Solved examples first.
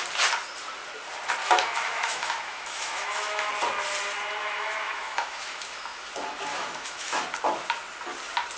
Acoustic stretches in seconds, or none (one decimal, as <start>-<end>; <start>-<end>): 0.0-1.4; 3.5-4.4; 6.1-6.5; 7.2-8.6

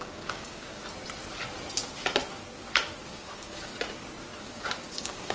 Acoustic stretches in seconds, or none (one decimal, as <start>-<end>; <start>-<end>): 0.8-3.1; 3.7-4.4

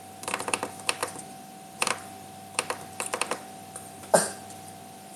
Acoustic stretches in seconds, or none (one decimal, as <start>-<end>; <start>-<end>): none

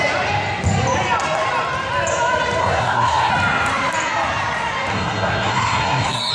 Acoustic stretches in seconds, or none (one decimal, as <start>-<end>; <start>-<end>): 0.0-2.6; 3.3-4.9